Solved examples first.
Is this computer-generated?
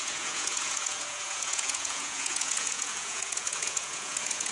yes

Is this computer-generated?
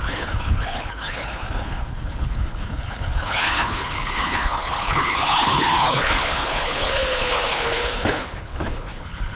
yes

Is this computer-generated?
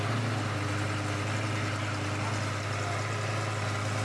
no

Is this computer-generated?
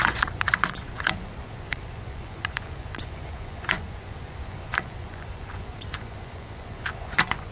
yes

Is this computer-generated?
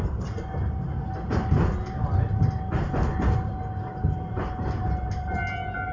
no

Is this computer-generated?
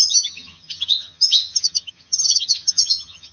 yes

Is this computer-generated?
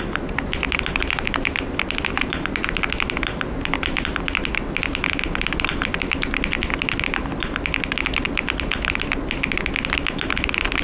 no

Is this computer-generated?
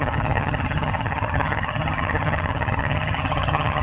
yes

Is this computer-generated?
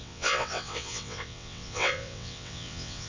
yes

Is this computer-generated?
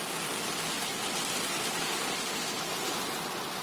no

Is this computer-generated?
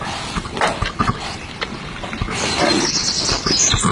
no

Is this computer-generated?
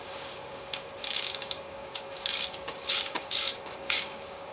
yes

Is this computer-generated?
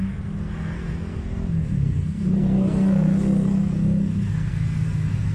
yes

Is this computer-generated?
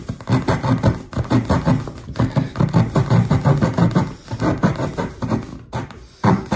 no